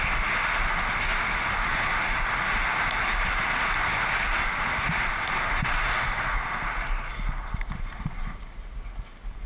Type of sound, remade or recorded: recorded